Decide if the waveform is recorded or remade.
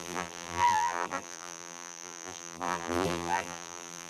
remade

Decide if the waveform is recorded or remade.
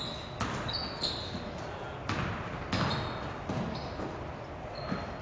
recorded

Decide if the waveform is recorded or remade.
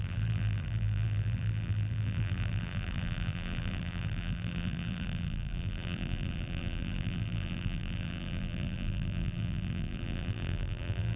remade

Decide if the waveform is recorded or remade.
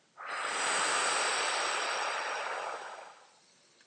recorded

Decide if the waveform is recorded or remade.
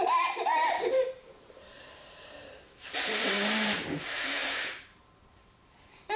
remade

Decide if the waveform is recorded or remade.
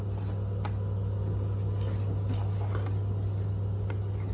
recorded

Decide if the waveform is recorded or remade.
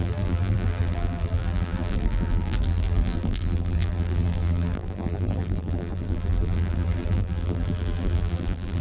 remade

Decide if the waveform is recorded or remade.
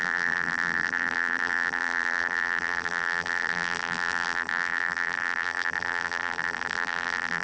remade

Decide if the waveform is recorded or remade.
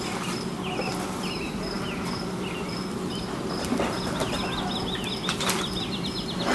recorded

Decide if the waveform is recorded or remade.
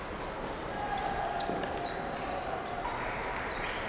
remade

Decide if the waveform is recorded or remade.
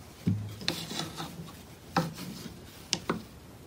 recorded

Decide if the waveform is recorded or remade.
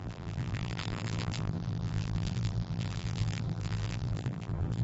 remade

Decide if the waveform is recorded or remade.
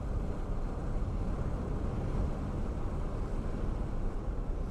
recorded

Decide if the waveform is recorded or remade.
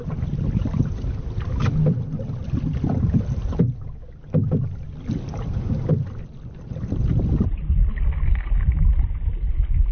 recorded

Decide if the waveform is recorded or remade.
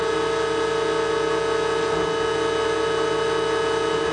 recorded